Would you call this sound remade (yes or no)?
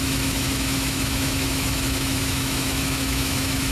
yes